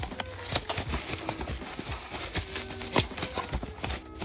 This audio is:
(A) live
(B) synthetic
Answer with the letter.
A